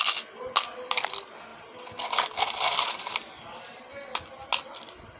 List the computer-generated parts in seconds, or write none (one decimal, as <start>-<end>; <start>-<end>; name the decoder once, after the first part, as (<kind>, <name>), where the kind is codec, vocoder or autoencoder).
none